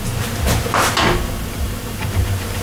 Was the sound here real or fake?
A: real